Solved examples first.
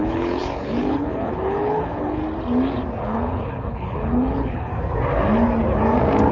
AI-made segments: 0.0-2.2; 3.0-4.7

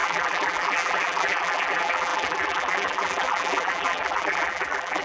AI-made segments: 0.0-5.0